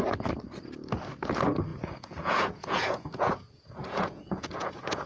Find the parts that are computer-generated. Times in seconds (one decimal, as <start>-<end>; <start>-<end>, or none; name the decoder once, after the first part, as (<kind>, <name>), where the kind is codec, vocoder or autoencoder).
1.7-5.1 (vocoder, Vocos)